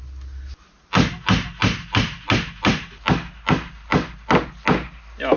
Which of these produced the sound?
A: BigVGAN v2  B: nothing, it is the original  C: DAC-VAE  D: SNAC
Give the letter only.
B